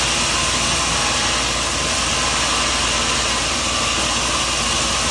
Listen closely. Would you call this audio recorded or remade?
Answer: recorded